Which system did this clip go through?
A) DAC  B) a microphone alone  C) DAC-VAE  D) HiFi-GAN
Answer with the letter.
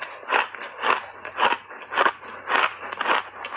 B